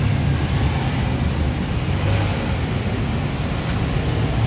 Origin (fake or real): real